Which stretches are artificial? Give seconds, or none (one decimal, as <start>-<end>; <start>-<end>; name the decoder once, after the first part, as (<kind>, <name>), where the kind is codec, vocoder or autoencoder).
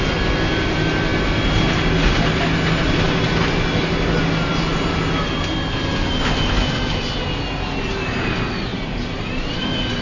8.7-9.6 (vocoder, BigVGAN v2)